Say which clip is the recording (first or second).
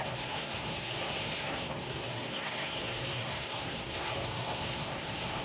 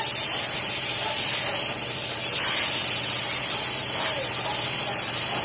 second